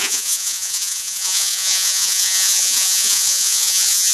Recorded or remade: remade